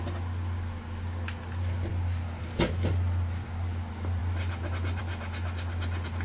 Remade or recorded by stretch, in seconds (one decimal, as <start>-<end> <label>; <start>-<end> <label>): 0.0-6.2 recorded